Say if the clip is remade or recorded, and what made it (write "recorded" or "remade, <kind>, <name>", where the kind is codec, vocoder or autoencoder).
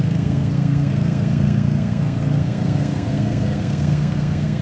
remade, codec, SNAC